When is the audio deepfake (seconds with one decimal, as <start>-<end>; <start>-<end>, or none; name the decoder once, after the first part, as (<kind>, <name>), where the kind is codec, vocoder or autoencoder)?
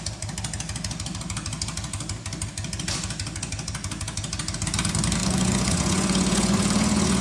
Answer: 5.2-7.2 (vocoder, Vocos)